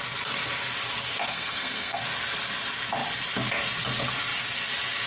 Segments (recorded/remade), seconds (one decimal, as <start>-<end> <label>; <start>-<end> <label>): 0.0-1.3 recorded; 1.3-2.0 remade; 2.0-5.1 recorded